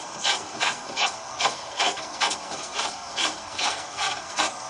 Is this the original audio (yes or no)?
no